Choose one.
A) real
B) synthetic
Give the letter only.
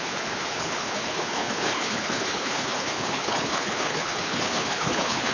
B